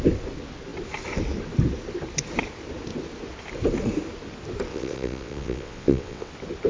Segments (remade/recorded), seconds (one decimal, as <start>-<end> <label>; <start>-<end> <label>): 0.0-4.7 recorded; 4.7-6.3 remade; 6.3-6.7 recorded